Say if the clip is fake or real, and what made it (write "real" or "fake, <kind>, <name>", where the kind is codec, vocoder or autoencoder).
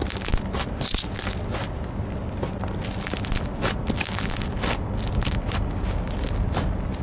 real